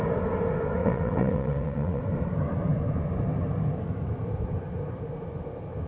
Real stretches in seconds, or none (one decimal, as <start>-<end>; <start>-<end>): 0.0-0.8; 2.0-5.9